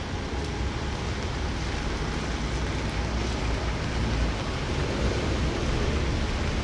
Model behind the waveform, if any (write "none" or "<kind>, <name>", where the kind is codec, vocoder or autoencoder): none